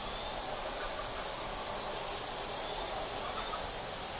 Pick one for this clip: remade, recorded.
recorded